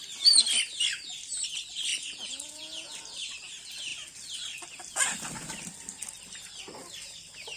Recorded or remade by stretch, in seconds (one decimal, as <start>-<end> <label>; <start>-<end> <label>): 0.0-1.9 recorded; 1.9-2.9 remade; 2.9-7.6 recorded